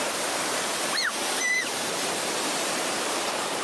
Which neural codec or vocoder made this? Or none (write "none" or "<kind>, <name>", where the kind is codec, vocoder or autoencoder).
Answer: vocoder, BigVGAN v2